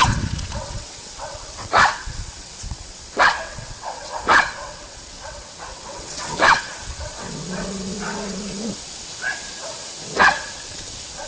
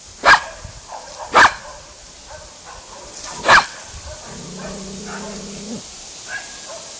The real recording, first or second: second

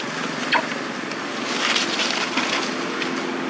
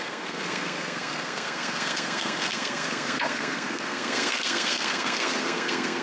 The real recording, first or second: first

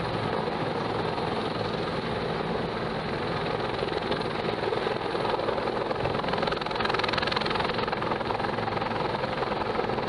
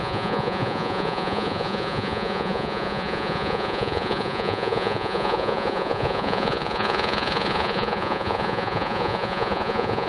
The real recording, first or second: first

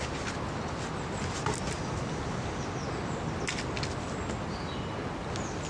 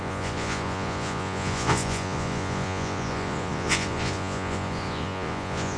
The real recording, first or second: first